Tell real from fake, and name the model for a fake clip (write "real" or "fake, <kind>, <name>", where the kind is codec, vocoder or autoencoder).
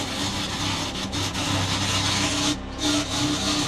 real